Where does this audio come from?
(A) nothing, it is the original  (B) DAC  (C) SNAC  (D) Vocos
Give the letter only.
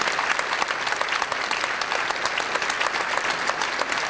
A